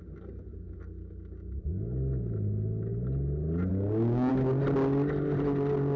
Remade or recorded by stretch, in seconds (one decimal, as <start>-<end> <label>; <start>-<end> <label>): 0.0-3.7 recorded; 3.7-4.3 remade; 4.3-6.0 recorded